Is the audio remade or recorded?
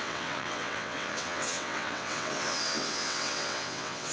remade